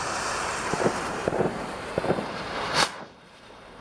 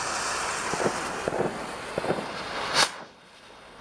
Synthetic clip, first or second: first